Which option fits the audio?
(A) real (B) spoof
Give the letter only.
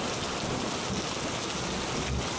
A